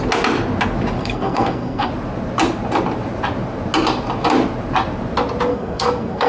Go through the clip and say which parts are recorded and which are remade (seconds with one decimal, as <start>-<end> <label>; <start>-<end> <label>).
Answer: 0.0-1.0 recorded; 1.0-1.9 remade; 1.9-5.5 recorded; 5.5-6.3 remade